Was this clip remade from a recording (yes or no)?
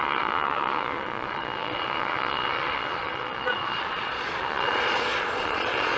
yes